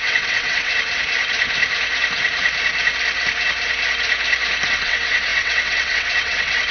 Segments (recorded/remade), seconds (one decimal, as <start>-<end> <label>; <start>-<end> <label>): 0.0-0.7 remade; 0.7-4.7 recorded; 4.7-6.7 remade